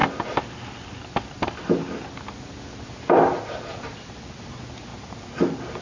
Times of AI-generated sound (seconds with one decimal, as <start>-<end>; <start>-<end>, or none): 4.9-5.8